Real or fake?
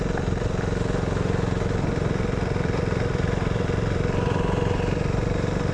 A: real